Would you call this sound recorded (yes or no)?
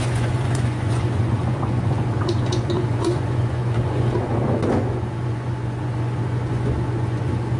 no